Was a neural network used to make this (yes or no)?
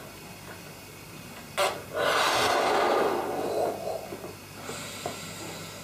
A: no